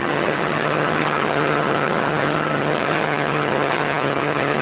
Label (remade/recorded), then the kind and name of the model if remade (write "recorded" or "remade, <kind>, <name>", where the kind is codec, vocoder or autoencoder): remade, vocoder, HiFi-GAN